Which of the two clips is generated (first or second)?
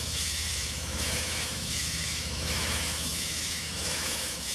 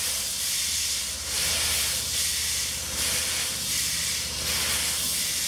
first